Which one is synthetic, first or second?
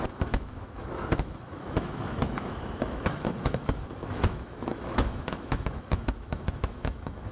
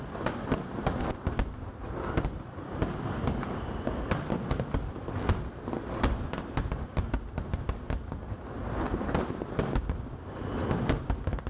first